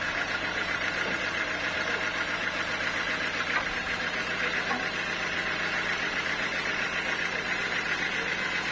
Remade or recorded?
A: remade